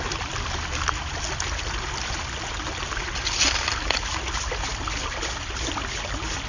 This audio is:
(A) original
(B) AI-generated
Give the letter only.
A